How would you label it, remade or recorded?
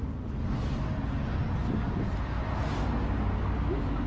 recorded